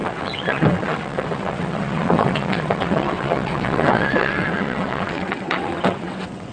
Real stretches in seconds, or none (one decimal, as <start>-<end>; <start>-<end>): none

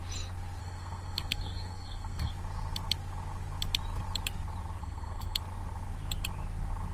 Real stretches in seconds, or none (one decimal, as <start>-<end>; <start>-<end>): 0.0-0.6; 2.3-4.8; 5.4-6.9